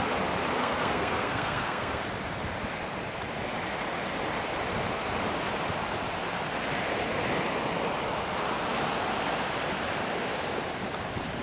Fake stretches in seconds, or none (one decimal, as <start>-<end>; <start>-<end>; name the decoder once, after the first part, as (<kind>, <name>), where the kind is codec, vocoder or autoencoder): 0.6-2.0 (codec, SNAC)